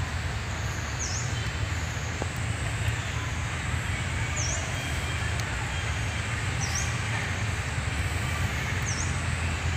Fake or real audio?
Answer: real